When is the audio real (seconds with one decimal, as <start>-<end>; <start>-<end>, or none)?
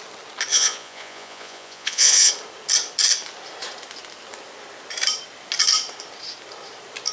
0.0-0.5; 2.3-7.1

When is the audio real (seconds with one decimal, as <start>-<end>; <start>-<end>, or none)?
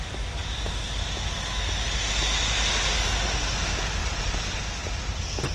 0.0-5.5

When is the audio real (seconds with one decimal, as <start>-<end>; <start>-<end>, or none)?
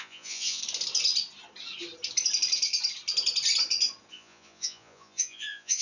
0.6-4.1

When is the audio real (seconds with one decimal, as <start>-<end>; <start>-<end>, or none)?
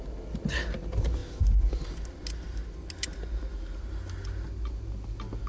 0.0-5.5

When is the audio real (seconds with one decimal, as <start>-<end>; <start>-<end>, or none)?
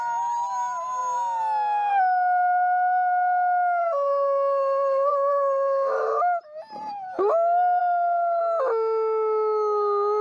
0.0-3.8; 6.2-7.8; 8.4-10.2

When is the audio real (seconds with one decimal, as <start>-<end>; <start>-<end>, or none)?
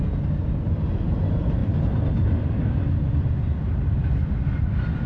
0.0-5.1